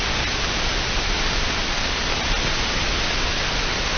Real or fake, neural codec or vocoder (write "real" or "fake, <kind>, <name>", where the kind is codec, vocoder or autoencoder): real